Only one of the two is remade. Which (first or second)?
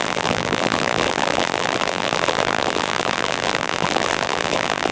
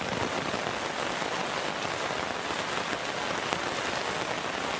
first